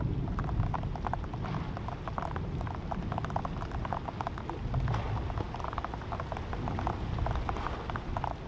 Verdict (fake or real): real